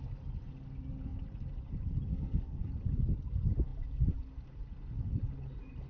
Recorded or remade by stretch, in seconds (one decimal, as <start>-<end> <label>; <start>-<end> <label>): 0.0-2.1 recorded; 2.1-2.7 remade; 2.7-5.9 recorded